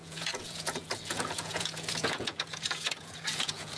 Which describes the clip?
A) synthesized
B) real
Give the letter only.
A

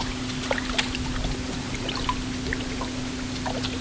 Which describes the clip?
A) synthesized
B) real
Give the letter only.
B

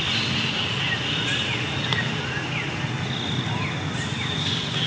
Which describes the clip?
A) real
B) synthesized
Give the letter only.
A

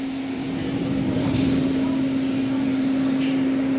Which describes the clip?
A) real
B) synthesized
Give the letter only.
B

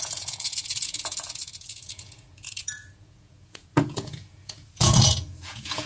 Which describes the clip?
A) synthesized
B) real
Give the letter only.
A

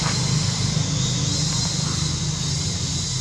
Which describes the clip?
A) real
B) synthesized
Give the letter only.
A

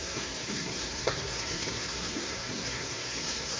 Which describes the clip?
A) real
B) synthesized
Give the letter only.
B